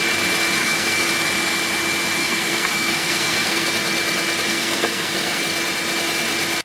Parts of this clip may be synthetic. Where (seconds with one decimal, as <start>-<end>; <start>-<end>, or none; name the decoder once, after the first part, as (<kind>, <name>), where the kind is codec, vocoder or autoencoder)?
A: 0.6-1.1 (codec, SNAC); 2.2-3.7; 4.5-5.4